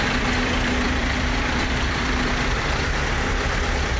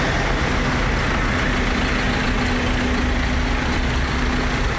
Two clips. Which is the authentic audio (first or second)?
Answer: second